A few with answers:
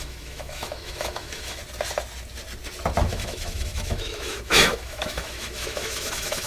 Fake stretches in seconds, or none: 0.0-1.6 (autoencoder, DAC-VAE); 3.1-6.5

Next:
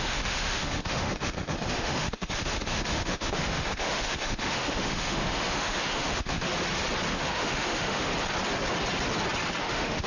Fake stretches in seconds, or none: 0.0-6.5 (autoencoder, DAC-VAE); 7.1-8.1; 9.6-10.1

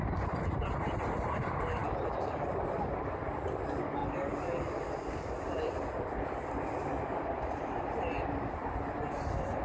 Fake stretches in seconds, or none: none

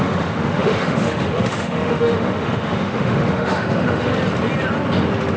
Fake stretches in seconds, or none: 0.0-4.1 (autoencoder, DAC-VAE)

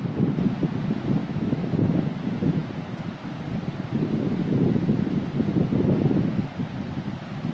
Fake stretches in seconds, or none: 1.2-1.7 (autoencoder, DAC-VAE)

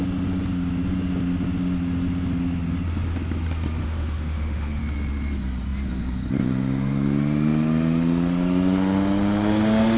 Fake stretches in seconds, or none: 3.8-4.8 (autoencoder, DAC-VAE)

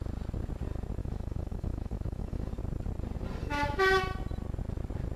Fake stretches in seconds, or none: 1.0-2.5 (autoencoder, DAC-VAE); 3.4-4.0